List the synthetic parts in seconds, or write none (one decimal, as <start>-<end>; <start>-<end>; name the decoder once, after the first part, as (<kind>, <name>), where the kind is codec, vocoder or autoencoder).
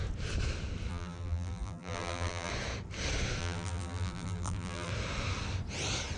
0.9-2.5 (vocoder, BigVGAN v2); 3.4-4.9